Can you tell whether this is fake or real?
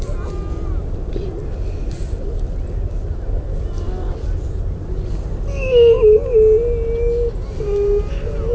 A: real